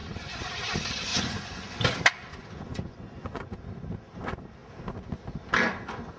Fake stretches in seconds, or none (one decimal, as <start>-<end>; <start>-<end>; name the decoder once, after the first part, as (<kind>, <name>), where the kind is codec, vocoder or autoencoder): 0.0-0.5 (vocoder, Vocos); 1.1-1.8; 2.3-3.6